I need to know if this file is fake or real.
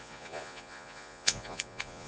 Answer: fake